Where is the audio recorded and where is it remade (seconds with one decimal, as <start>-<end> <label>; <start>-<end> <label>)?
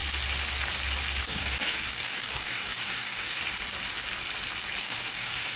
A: 0.0-1.2 recorded; 1.2-3.4 remade; 3.4-4.8 recorded; 4.8-5.6 remade